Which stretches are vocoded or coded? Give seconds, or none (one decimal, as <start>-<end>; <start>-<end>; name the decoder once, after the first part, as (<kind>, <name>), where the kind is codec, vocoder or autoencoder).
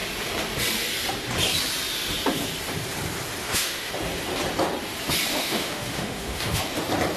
3.4-3.9 (autoencoder, DAC-VAE); 5.3-6.6